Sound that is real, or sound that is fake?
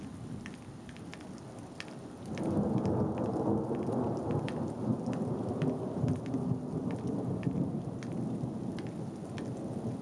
real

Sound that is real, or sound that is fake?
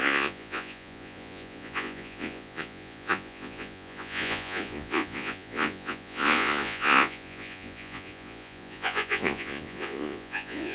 fake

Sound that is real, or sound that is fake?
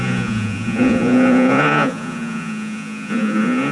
fake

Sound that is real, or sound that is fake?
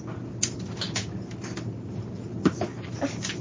real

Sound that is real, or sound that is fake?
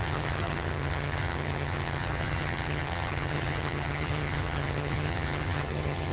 fake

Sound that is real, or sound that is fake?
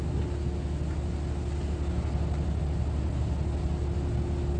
real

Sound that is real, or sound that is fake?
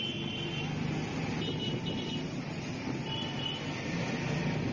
real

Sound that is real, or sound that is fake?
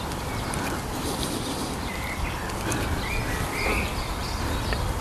real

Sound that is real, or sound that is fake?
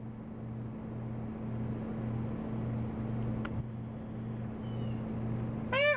real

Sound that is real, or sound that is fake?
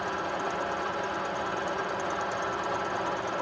real